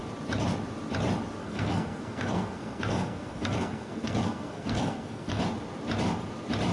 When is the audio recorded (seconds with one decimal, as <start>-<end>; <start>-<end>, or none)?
0.0-1.4; 5.4-6.7

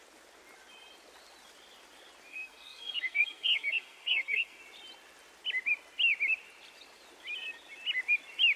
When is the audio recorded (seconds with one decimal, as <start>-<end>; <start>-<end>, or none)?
0.0-2.3; 4.6-8.6

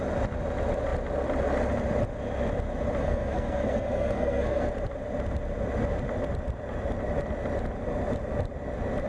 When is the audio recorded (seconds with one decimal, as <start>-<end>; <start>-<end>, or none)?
0.0-3.0; 4.7-9.1

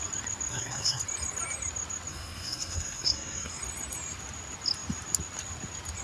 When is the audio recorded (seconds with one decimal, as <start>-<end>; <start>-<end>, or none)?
0.0-0.5; 1.0-2.1; 3.6-6.0

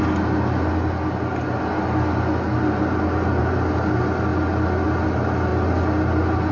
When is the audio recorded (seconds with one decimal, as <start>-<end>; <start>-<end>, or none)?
0.0-6.5

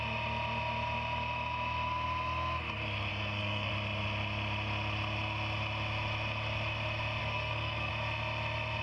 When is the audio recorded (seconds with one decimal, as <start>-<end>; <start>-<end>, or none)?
0.0-3.1; 3.7-7.2; 7.9-8.8

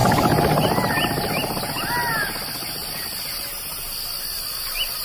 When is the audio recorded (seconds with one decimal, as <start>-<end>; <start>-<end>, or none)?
0.0-5.0